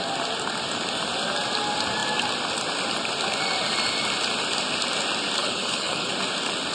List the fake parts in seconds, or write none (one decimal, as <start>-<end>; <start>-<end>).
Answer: 5.4-6.1